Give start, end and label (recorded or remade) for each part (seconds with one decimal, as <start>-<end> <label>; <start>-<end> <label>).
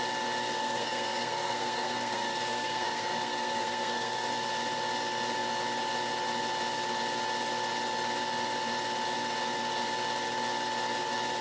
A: 0.0-0.6 recorded; 0.6-4.3 remade; 4.3-11.4 recorded